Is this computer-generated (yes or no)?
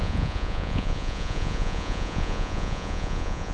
yes